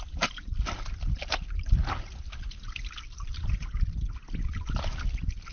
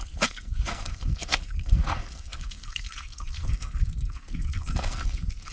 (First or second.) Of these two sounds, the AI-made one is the second